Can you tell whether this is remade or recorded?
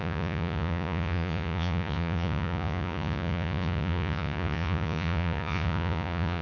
remade